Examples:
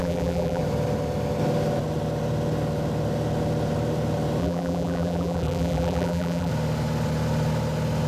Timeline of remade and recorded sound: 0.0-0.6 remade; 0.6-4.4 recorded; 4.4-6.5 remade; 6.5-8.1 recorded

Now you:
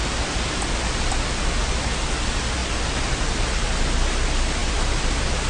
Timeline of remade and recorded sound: 0.0-2.6 recorded; 2.6-3.5 remade; 3.5-4.6 recorded; 4.6-5.5 remade

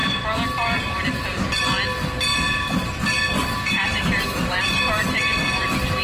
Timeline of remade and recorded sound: 0.0-3.4 recorded; 3.4-4.6 remade; 4.6-6.0 recorded

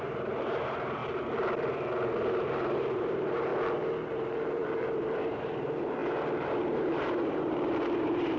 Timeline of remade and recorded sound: 0.0-1.0 remade; 1.0-2.3 recorded; 2.3-3.5 remade; 3.5-4.1 recorded; 4.1-8.4 remade